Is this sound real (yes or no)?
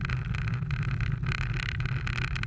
yes